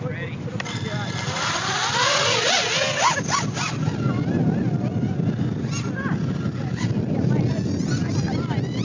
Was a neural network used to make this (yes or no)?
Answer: no